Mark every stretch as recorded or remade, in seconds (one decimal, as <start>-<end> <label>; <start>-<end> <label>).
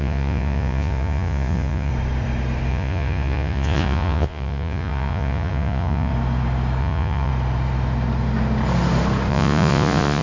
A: 0.0-1.9 remade; 1.9-2.7 recorded; 2.7-6.1 remade; 6.1-6.8 recorded; 6.8-7.3 remade; 7.3-9.3 recorded; 9.3-10.2 remade